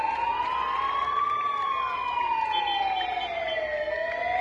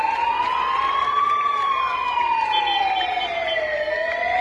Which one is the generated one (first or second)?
second